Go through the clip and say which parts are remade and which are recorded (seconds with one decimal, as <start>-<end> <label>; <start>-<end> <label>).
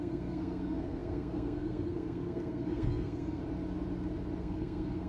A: 0.0-3.4 remade; 3.4-4.4 recorded; 4.4-5.1 remade